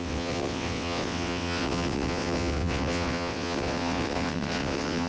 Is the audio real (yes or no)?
no